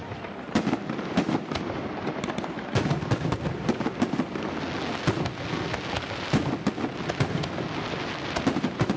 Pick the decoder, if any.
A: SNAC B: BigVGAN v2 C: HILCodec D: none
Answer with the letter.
D